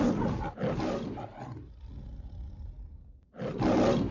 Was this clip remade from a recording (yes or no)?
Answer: no